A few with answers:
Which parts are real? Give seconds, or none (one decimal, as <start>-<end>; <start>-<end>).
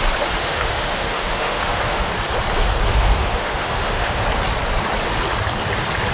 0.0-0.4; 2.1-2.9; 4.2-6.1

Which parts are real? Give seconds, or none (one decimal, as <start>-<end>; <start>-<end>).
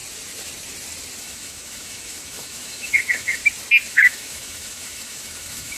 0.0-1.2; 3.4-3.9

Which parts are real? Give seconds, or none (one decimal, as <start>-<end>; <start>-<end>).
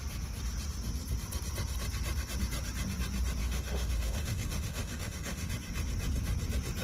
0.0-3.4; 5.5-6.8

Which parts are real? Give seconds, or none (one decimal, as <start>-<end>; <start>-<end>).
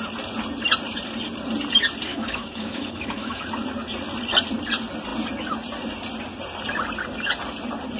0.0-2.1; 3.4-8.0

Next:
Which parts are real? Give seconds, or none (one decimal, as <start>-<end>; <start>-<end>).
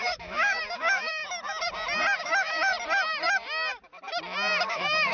1.2-2.2; 2.7-4.6